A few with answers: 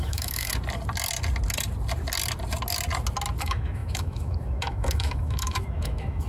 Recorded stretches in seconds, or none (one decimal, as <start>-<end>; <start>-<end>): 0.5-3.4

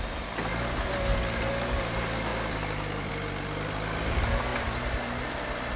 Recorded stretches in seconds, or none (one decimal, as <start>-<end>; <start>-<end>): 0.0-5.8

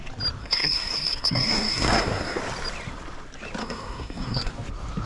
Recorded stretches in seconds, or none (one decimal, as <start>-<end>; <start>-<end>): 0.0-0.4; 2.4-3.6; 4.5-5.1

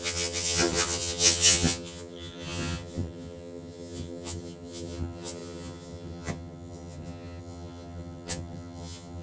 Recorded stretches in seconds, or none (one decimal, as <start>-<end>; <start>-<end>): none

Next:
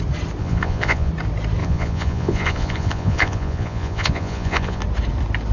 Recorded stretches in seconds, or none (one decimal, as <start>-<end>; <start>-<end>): 0.0-0.4; 1.1-1.6; 4.8-5.5

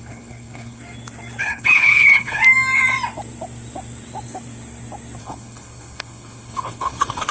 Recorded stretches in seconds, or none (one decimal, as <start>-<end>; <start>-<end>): 0.8-1.4; 2.4-5.2

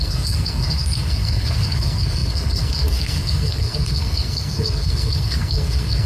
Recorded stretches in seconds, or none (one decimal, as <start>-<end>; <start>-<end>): none

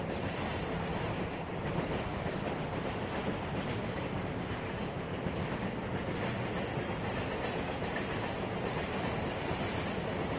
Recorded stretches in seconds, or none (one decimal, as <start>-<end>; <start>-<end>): 5.1-7.5